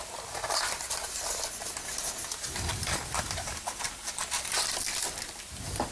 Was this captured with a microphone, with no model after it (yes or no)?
yes